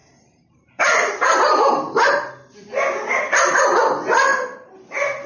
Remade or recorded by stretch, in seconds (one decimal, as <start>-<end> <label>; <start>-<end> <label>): 0.0-2.1 remade; 2.1-4.3 recorded; 4.3-5.3 remade

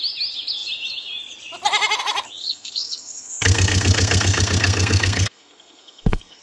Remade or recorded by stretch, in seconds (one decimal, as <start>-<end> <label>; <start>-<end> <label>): 0.0-2.4 recorded; 2.4-6.4 remade

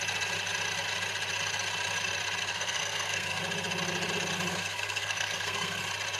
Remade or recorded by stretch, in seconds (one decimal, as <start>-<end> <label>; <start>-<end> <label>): 0.0-2.4 recorded; 2.4-3.4 remade; 3.4-4.5 recorded; 4.5-5.8 remade; 5.8-6.2 recorded

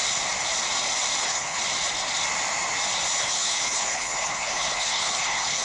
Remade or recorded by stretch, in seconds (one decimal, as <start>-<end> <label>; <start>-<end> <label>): 0.0-1.2 recorded; 1.2-1.6 remade; 1.6-3.2 recorded; 3.2-5.6 remade

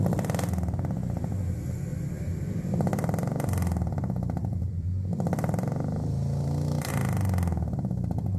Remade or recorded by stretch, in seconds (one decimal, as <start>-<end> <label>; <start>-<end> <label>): 0.0-1.9 recorded; 1.9-6.9 remade; 6.9-8.4 recorded

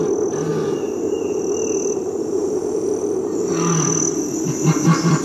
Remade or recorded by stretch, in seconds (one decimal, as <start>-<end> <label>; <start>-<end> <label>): 0.0-2.4 recorded; 2.4-3.5 remade; 3.5-5.2 recorded

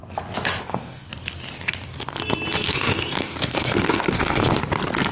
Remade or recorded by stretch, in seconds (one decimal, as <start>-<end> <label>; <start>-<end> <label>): 0.0-0.6 recorded; 0.6-1.1 remade; 1.1-2.6 recorded; 2.6-4.5 remade; 4.5-5.1 recorded

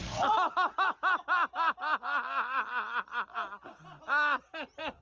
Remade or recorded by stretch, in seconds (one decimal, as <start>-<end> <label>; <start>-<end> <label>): 0.0-5.0 recorded